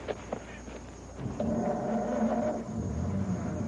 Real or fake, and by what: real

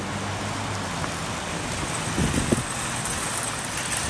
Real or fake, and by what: real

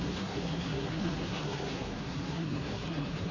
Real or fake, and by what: fake, codec, SNAC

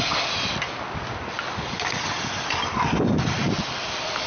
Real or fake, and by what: real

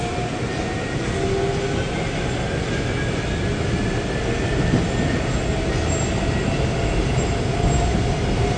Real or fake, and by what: real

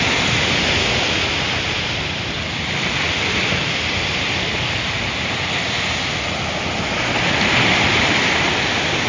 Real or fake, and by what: real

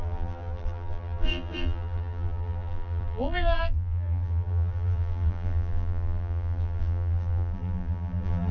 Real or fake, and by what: fake, vocoder, BigVGAN v2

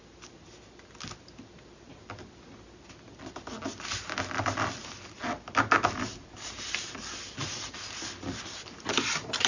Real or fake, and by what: real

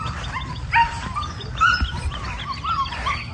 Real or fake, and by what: real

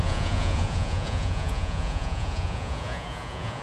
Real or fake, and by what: fake, vocoder, Vocos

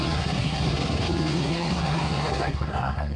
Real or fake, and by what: fake, codec, SNAC